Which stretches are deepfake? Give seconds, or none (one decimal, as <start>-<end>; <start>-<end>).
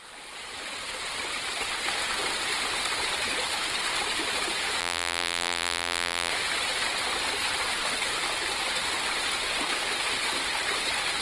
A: 4.8-6.3